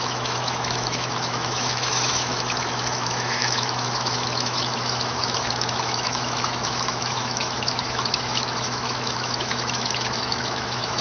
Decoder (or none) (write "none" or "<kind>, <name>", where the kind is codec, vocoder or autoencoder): autoencoder, DAC-VAE